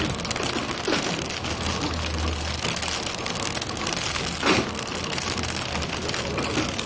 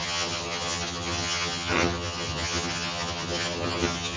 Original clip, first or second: first